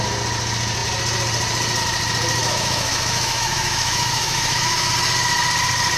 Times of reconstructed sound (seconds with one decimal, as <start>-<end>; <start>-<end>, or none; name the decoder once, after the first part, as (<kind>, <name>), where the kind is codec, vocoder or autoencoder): 2.4-4.9 (autoencoder, DAC-VAE)